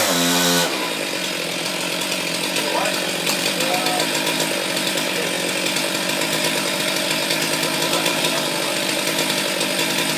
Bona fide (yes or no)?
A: yes